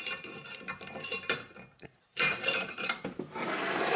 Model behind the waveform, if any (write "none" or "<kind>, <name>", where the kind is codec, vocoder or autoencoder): vocoder, BigVGAN v2